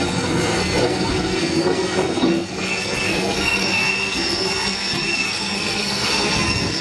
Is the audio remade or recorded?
remade